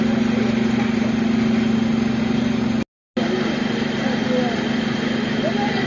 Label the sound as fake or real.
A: real